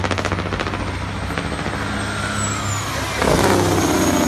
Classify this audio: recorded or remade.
recorded